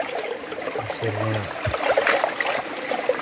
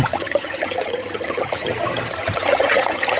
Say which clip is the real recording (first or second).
first